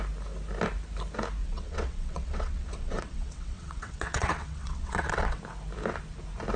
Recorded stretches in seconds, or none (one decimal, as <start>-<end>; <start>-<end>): 0.0-1.4; 5.4-6.6